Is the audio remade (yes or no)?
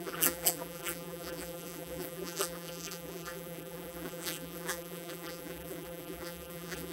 yes